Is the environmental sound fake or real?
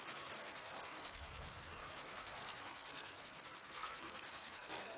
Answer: fake